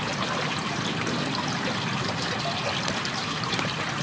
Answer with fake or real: real